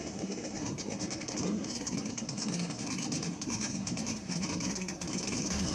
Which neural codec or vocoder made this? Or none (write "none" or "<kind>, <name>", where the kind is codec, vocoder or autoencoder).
codec, SNAC